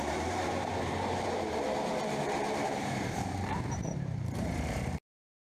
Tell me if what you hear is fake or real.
fake